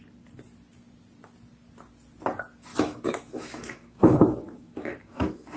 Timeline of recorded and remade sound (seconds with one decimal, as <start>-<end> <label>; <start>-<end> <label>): 0.0-2.7 recorded; 2.7-5.6 remade